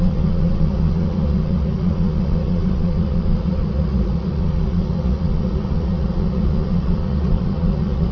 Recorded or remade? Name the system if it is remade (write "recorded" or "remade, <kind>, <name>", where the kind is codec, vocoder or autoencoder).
remade, vocoder, Vocos